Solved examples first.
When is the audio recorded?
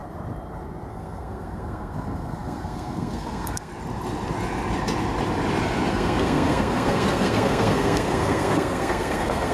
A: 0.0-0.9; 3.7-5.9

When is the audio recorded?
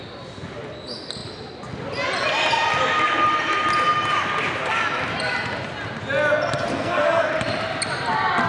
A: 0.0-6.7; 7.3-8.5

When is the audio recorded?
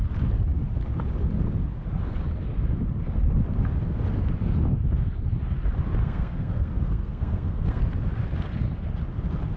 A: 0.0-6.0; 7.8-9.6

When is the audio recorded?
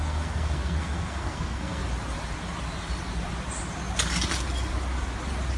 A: 1.8-5.6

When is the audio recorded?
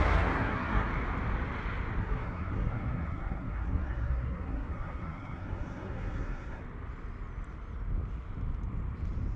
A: 0.9-2.0; 6.6-9.4